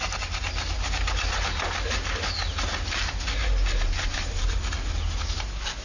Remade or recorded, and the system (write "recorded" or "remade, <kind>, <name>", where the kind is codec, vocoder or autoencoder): recorded